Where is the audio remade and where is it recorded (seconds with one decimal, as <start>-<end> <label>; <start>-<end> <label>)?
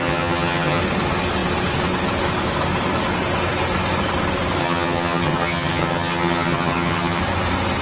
0.0-0.8 remade; 0.8-4.6 recorded; 4.6-7.2 remade; 7.2-7.8 recorded